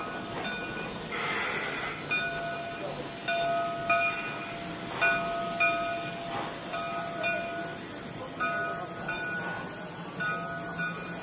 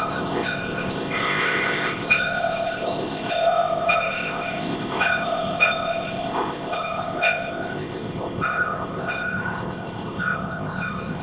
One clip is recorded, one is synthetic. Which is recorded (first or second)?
first